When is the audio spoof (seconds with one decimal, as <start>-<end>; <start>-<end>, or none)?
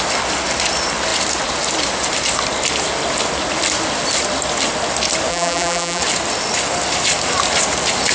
5.3-6.0